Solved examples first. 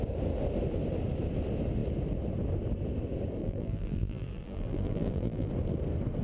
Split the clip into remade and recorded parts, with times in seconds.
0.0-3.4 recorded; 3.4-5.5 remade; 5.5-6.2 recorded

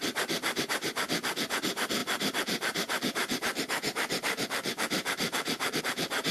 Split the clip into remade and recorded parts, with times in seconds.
0.0-2.0 recorded; 2.0-5.8 remade; 5.8-6.3 recorded

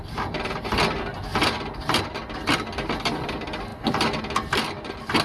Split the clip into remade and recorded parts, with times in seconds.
0.0-0.7 remade; 0.7-1.3 recorded; 1.3-2.0 remade; 2.0-5.2 recorded